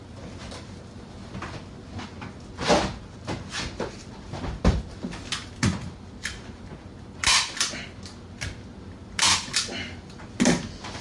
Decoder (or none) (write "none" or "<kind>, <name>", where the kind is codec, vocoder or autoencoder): none